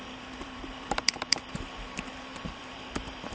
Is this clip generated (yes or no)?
yes